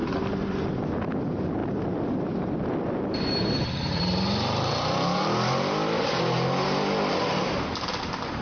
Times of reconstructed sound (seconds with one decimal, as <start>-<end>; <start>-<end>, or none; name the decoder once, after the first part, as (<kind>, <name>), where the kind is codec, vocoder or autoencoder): 0.0-1.2 (vocoder, BigVGAN v2); 1.6-6.2